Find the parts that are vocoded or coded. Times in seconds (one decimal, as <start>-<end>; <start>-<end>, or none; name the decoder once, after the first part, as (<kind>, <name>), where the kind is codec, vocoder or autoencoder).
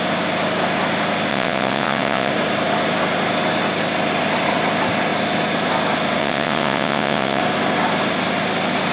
1.3-2.3 (vocoder, WaveNeXt); 6.2-7.4